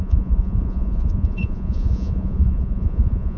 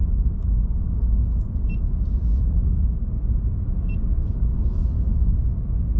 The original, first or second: second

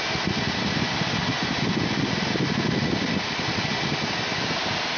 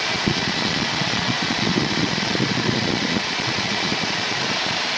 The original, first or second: first